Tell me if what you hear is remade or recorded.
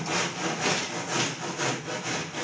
recorded